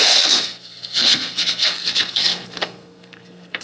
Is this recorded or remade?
remade